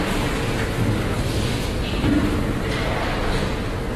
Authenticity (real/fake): real